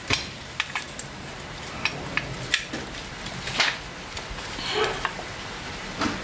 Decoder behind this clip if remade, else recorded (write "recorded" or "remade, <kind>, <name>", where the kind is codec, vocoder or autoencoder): recorded